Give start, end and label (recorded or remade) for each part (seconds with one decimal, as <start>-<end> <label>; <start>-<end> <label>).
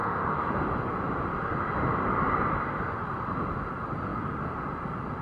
0.0-0.5 remade; 0.5-5.2 recorded